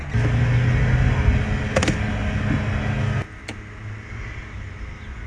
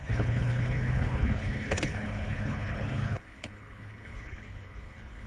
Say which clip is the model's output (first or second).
second